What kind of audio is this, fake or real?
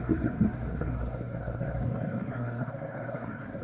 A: fake